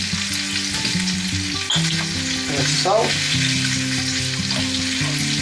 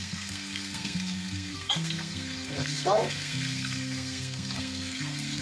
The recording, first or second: first